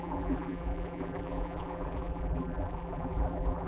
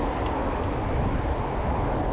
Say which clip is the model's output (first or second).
first